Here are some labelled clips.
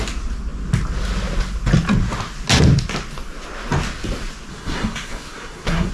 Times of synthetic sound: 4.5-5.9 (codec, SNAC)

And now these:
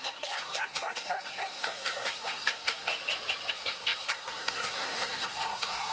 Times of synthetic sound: 0.0-2.9 (codec, SNAC); 3.5-5.9

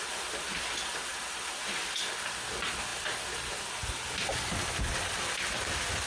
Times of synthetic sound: none